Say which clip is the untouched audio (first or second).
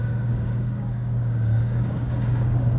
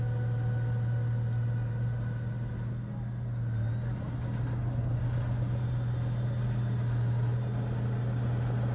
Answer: second